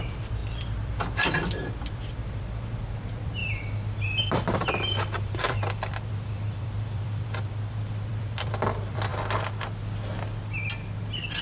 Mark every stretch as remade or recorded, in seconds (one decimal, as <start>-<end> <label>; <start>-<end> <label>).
0.0-3.4 remade; 3.4-4.2 recorded; 4.2-9.1 remade; 9.1-11.4 recorded